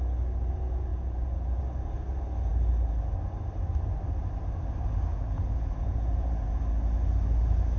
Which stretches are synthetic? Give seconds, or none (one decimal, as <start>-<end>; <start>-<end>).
0.9-1.6; 5.1-6.6